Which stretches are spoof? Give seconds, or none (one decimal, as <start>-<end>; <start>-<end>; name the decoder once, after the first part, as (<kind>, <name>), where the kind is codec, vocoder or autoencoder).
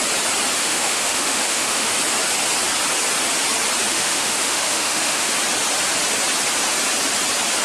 0.6-1.9 (autoencoder, DAC-VAE); 3.9-5.3